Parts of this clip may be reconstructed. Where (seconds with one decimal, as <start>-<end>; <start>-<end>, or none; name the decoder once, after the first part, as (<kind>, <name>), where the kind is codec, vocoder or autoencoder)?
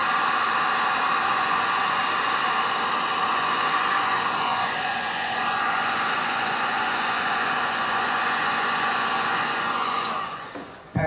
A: 1.3-2.0 (vocoder, Vocos); 3.3-11.1